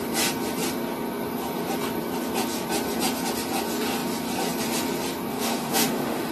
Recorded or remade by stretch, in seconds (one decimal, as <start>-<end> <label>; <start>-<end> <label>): 0.0-5.3 recorded; 5.3-6.3 remade